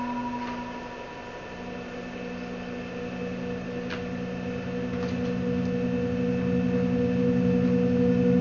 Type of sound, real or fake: real